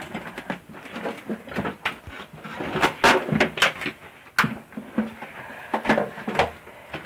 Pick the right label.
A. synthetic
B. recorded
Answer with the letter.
B